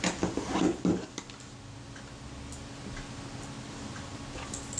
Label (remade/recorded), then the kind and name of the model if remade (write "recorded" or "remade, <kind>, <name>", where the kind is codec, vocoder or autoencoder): recorded